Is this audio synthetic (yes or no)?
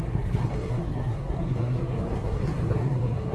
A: yes